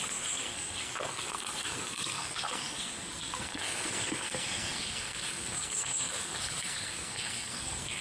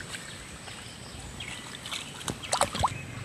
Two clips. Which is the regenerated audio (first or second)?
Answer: first